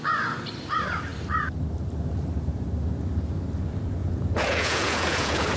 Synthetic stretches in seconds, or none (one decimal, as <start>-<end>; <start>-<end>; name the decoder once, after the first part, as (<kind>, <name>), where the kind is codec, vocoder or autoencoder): 4.0-5.6 (vocoder, Vocos)